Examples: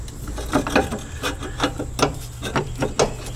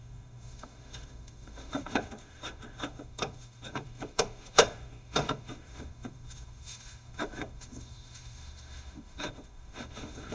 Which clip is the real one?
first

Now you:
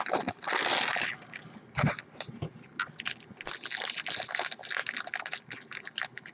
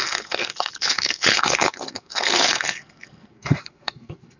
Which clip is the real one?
first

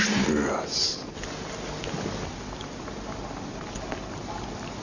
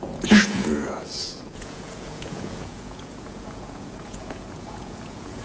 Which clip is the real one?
first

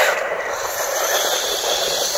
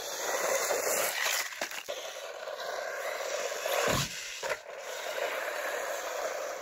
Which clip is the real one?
second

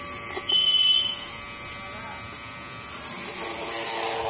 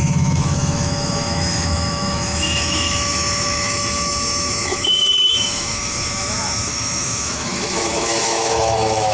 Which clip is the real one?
first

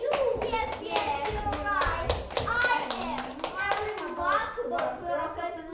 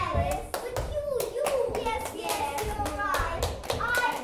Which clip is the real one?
first